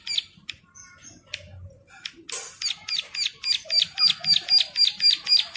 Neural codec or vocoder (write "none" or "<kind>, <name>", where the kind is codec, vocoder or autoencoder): none